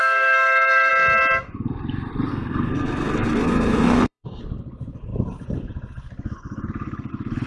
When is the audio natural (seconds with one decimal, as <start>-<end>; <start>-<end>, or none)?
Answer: 0.9-2.3; 4.4-7.5